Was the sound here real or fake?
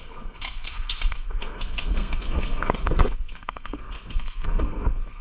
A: fake